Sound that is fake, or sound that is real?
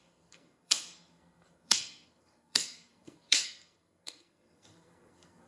fake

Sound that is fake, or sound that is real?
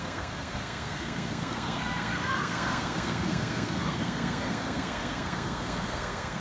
fake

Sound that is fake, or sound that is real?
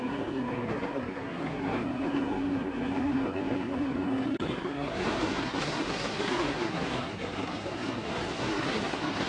fake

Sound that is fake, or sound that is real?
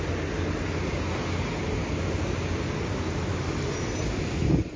real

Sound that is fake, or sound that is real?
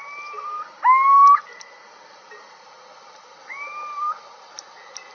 real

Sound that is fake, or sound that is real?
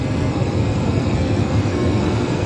fake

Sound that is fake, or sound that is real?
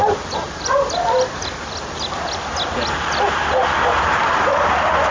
real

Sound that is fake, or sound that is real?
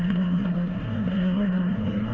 fake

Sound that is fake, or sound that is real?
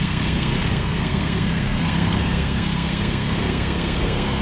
fake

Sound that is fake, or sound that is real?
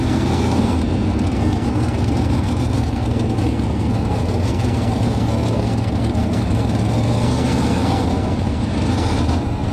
fake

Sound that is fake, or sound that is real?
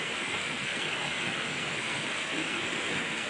fake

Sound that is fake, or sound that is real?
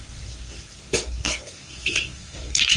fake